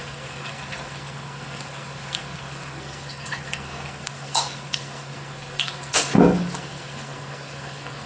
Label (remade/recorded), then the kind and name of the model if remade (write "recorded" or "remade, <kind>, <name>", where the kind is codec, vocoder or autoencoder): remade, codec, SNAC